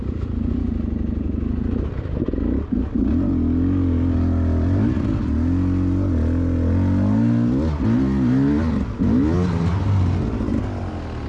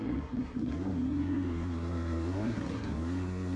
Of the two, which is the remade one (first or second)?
second